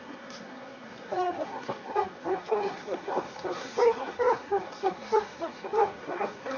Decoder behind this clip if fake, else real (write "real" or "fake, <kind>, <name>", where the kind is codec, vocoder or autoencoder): fake, codec, SNAC